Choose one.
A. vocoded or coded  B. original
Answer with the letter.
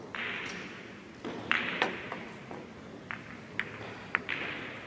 B